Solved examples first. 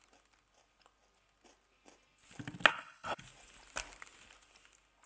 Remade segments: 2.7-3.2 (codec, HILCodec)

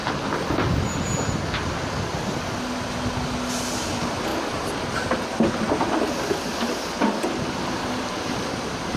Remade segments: none

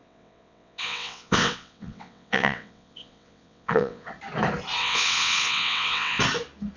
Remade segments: 0.0-4.1 (vocoder, WaveNeXt); 4.8-6.2

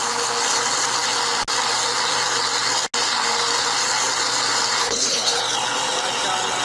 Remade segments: 4.8-5.4 (codec, HILCodec)

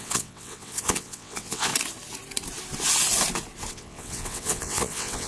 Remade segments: 0.0-1.7 (vocoder, WaveNeXt); 3.7-5.3

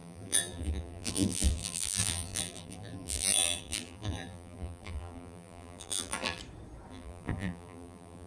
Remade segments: 0.0-6.4 (vocoder, BigVGAN v2); 6.9-8.3

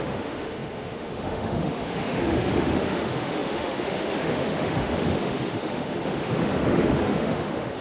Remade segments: 0.0-7.8 (autoencoder, DAC-VAE)